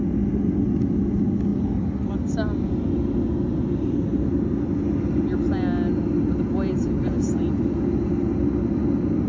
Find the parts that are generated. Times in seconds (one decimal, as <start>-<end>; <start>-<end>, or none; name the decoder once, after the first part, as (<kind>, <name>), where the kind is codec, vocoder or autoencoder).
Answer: none